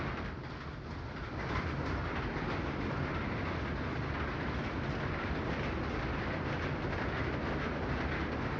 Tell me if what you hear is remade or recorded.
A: recorded